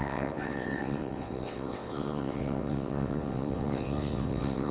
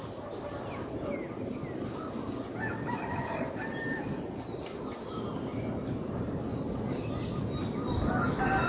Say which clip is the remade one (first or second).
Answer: first